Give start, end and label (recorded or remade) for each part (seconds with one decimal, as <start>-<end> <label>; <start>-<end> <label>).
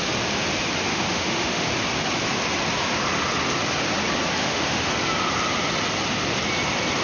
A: 0.0-0.9 recorded; 0.9-1.7 remade; 1.7-4.4 recorded; 4.4-4.9 remade; 4.9-7.0 recorded